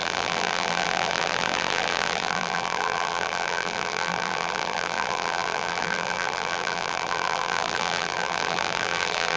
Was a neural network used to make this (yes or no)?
yes